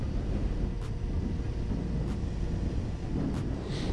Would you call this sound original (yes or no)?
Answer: yes